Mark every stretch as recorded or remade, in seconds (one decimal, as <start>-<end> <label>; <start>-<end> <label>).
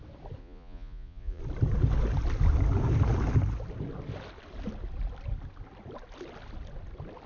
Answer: 0.0-0.4 recorded; 0.4-1.4 remade; 1.4-7.3 recorded